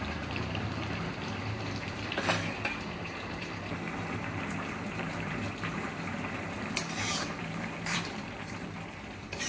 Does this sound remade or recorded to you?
remade